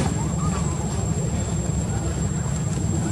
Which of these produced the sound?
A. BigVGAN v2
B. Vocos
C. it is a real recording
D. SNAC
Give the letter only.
A